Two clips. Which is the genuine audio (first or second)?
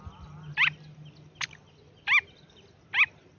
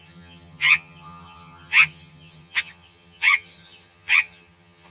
first